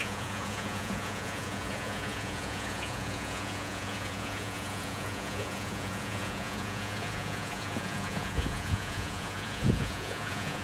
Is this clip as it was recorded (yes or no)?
no